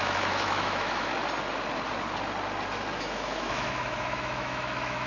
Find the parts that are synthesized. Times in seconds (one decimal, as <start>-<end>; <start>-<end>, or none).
0.0-1.1; 3.0-5.1

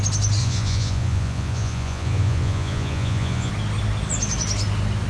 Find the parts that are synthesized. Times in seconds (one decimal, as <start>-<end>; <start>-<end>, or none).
0.4-3.5